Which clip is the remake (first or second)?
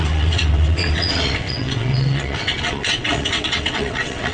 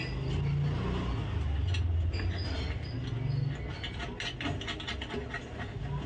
first